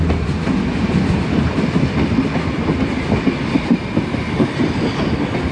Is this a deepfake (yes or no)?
no